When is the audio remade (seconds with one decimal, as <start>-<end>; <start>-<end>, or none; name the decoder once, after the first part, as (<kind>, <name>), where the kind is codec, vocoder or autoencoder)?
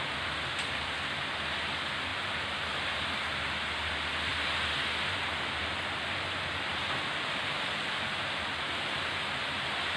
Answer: 2.1-3.0 (vocoder, BigVGAN v2); 6.7-9.4